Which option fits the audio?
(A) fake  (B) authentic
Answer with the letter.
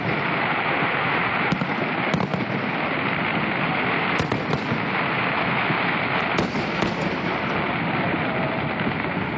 B